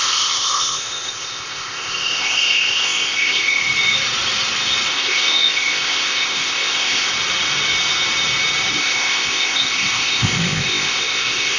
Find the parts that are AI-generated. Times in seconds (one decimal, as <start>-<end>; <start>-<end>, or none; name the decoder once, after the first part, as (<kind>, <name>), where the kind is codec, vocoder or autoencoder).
0.0-3.6 (codec, ZipCodec); 4.9-7.1; 8.8-11.6